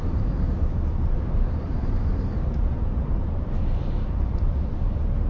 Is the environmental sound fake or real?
fake